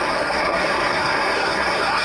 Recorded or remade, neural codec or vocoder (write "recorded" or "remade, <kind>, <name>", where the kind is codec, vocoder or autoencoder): remade, codec, SNAC